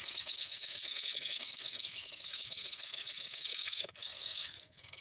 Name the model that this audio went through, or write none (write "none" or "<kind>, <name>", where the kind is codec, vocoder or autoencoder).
codec, SNAC